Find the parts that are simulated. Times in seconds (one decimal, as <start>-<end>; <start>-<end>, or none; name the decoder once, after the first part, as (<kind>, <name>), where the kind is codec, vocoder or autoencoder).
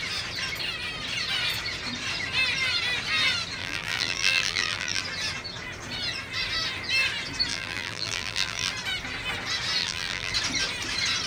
3.6-5.0 (vocoder, BigVGAN v2); 7.5-8.7; 9.8-10.3